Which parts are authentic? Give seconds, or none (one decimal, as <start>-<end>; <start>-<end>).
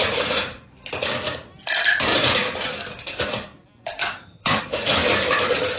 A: 0.0-4.1; 4.7-5.8